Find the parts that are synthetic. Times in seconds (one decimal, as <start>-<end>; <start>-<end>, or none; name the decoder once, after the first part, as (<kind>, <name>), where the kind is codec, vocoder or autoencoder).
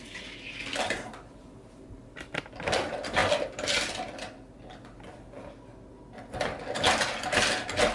none